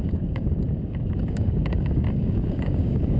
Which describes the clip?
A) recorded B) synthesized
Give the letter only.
B